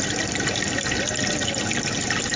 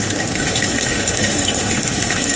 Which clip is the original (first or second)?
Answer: first